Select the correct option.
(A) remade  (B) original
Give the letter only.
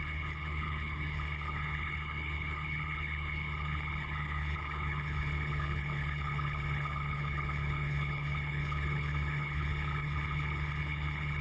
A